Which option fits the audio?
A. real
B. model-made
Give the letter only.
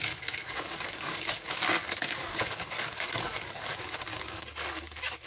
B